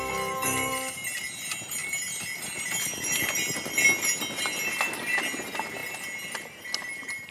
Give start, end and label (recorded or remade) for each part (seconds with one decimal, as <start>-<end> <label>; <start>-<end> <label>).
0.0-7.3 recorded